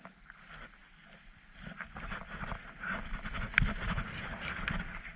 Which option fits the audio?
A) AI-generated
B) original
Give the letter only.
B